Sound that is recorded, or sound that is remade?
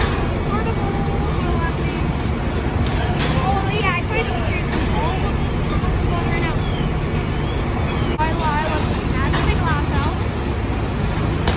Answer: recorded